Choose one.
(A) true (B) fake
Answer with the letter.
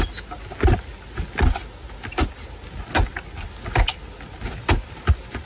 A